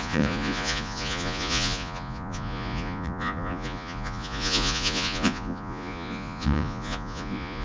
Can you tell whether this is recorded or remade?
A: remade